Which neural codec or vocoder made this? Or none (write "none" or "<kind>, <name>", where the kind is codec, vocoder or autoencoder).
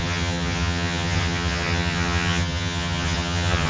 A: vocoder, HiFi-GAN